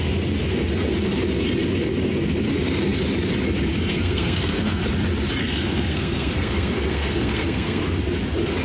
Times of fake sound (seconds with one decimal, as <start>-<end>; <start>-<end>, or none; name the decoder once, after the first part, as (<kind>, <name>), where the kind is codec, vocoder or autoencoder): 3.9-4.8 (codec, SNAC); 5.4-7.8